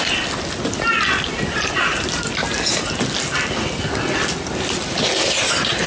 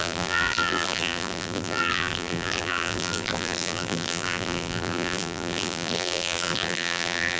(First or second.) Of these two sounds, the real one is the first